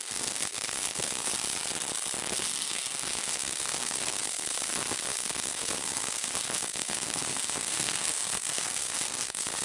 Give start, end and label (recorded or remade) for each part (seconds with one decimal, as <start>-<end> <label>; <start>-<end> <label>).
0.0-1.3 remade; 1.3-2.3 recorded; 2.3-9.6 remade